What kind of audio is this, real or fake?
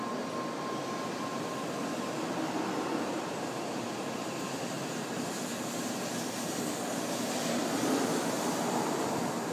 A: real